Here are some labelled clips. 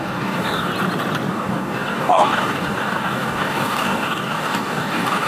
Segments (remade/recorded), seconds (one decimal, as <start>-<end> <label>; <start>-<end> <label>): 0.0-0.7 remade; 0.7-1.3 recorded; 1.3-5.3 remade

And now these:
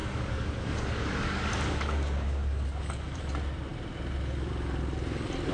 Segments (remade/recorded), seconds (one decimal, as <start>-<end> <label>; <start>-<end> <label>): 0.0-3.2 remade; 3.2-5.5 recorded

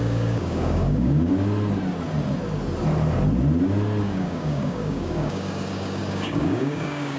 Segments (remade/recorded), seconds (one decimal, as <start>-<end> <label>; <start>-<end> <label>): 0.0-1.3 remade; 1.3-4.0 recorded; 4.0-7.2 remade